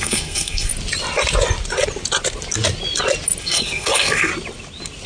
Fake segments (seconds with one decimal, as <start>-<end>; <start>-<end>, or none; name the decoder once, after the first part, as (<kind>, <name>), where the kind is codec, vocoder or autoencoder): 0.0-0.7 (codec, SNAC); 3.4-4.3